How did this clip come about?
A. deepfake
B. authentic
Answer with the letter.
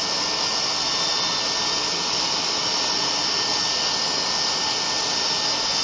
B